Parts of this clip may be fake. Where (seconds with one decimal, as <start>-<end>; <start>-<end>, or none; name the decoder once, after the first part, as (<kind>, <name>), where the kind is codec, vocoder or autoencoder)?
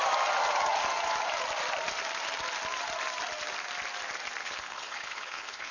4.4-5.7 (codec, HILCodec)